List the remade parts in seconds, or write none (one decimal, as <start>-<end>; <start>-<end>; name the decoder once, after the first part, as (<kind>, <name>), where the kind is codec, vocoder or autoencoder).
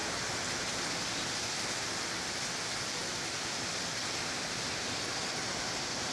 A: none